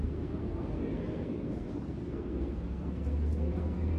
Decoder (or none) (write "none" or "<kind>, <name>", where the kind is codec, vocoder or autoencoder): codec, SNAC